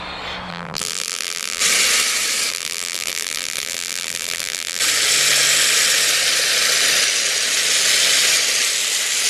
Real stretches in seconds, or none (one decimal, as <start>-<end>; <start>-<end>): 0.0-0.5; 1.6-2.5; 4.8-9.3